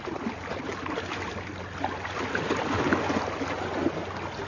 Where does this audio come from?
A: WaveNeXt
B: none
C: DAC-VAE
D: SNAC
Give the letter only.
B